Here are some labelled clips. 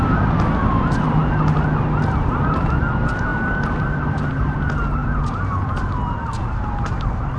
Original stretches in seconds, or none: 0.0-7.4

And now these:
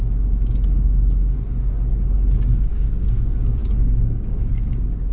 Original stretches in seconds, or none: 1.9-2.7

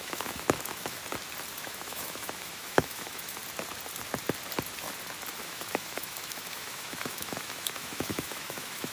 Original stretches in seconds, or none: 1.0-1.6; 3.4-5.4

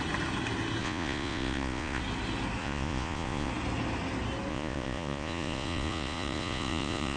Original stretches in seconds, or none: 0.0-0.8; 2.0-2.6; 3.5-4.5

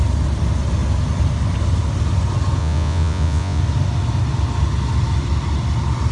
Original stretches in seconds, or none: 0.0-2.6; 3.6-6.1